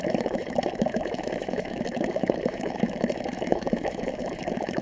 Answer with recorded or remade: remade